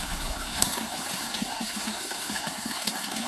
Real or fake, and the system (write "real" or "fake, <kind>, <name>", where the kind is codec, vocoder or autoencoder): fake, codec, SNAC